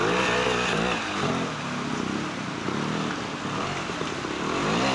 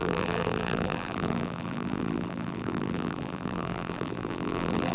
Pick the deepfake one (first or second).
second